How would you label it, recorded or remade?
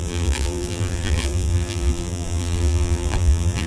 remade